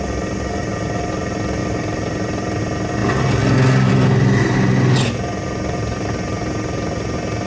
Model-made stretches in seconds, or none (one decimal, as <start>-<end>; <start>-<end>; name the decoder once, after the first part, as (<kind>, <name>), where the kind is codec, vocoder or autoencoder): 1.6-2.6 (vocoder, BigVGAN v2)